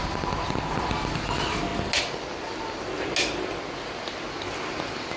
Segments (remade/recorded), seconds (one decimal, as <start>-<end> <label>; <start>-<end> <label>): 0.0-5.2 recorded